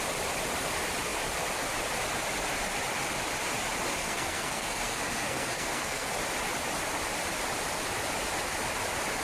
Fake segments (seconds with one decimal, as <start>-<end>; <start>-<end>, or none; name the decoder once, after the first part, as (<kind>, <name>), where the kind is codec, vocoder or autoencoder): 4.0-6.1 (codec, SNAC)